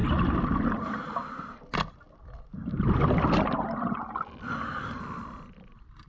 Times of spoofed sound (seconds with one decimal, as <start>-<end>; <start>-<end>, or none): none